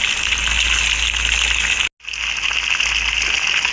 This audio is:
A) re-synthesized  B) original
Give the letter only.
B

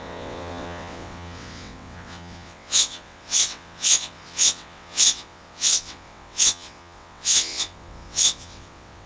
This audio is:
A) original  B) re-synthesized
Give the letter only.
B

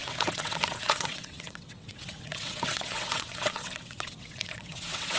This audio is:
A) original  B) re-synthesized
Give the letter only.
B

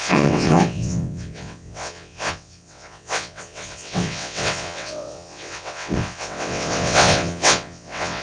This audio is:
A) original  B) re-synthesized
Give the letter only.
B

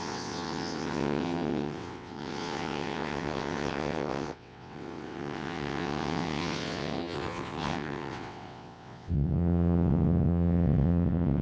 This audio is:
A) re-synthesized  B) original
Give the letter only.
A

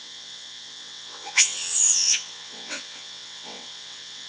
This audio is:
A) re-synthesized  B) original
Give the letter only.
A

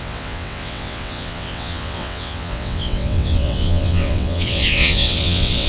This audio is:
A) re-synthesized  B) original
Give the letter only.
A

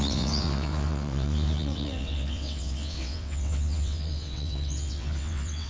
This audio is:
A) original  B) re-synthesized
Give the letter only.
B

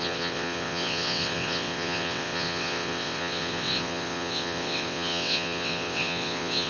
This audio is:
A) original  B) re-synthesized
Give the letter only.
B